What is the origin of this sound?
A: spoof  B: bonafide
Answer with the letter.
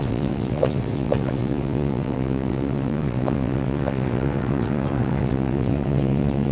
A